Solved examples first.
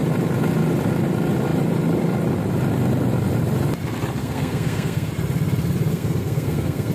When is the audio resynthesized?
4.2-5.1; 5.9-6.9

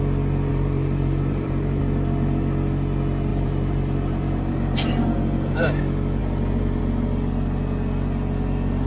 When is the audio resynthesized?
0.5-1.8; 3.3-5.8; 6.2-6.8

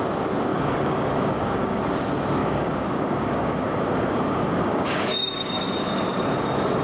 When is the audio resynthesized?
0.5-1.8; 2.4-6.2

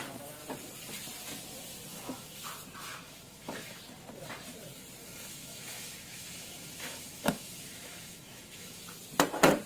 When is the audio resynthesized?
1.9-2.4; 2.8-3.8; 5.0-8.8

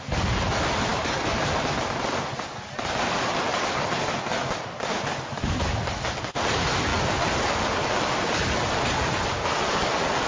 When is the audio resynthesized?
none